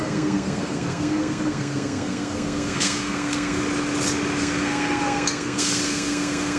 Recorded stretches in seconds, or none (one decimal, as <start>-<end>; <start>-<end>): 3.6-4.4